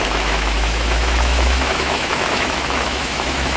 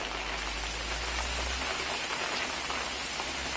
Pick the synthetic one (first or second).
first